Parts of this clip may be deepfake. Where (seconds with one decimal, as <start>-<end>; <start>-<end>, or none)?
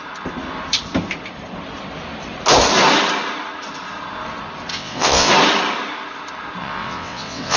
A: 4.7-5.3; 6.6-7.6